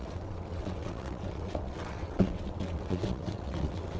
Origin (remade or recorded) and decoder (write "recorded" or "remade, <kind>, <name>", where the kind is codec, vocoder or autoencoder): remade, vocoder, WaveNeXt